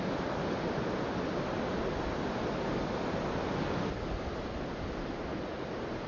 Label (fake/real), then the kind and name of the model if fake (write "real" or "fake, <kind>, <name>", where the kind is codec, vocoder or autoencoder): real